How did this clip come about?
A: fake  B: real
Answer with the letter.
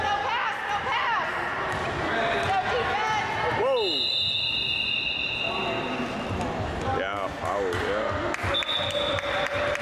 B